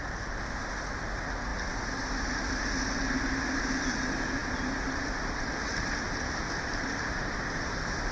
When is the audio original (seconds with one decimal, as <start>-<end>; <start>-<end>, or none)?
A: 0.0-8.1